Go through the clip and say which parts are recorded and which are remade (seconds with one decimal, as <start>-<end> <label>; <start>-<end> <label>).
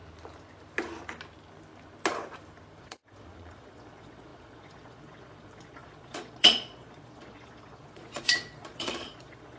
0.0-2.8 recorded; 2.8-9.6 remade